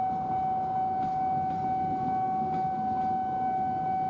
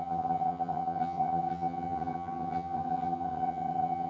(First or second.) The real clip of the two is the first